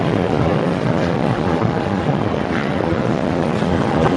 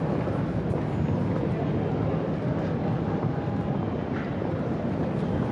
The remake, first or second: first